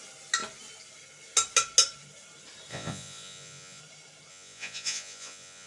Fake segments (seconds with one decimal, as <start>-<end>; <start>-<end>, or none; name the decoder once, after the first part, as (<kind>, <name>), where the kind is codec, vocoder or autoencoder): 2.7-3.8 (vocoder, Vocos); 4.3-5.7